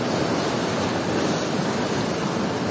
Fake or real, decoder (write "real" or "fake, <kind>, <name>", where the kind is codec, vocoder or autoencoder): real